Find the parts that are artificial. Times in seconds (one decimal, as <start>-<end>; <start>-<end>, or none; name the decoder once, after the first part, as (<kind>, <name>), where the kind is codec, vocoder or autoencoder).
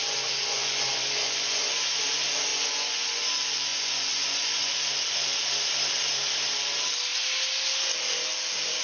0.0-1.9 (vocoder, Vocos); 2.5-3.2; 3.7-4.7